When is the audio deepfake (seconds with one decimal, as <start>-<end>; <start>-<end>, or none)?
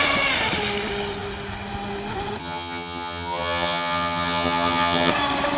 2.4-5.1